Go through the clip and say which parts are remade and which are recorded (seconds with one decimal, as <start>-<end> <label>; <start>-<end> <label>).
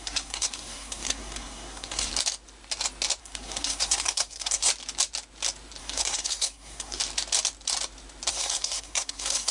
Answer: 0.0-2.1 remade; 2.1-3.2 recorded; 3.2-4.7 remade; 4.7-5.8 recorded; 5.8-7.0 remade; 7.0-8.3 recorded; 8.3-9.5 remade